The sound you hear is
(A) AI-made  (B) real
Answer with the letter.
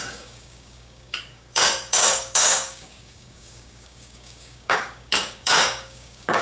A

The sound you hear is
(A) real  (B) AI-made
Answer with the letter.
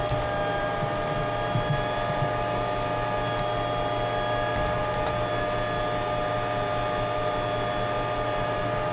A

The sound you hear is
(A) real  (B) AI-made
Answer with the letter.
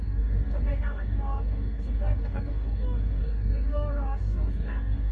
B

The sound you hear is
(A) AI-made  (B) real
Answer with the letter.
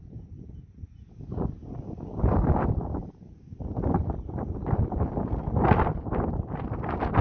B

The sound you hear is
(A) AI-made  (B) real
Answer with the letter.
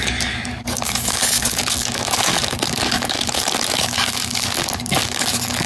A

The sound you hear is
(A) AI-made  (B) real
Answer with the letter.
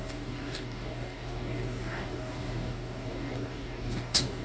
A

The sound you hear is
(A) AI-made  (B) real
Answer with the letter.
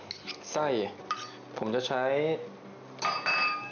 B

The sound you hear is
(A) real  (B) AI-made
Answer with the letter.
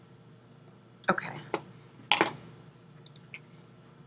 A